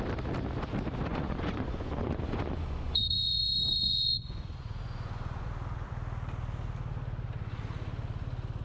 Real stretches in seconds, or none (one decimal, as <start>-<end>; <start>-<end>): 0.0-1.1; 5.5-8.6

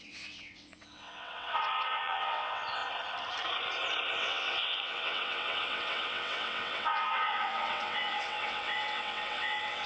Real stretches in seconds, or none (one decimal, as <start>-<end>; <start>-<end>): 2.8-4.2

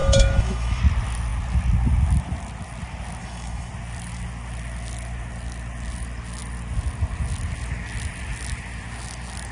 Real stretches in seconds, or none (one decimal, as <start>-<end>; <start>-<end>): 0.8-3.2; 3.7-9.5